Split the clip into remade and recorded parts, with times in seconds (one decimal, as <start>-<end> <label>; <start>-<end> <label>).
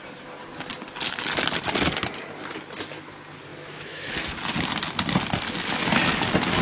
0.0-3.5 recorded; 3.5-4.1 remade; 4.1-6.6 recorded